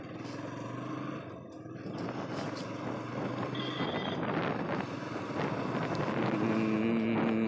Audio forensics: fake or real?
real